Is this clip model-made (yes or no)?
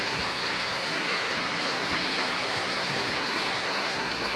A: yes